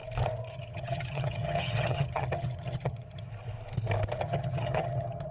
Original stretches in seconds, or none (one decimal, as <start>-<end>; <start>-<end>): 0.0-0.5; 3.3-4.2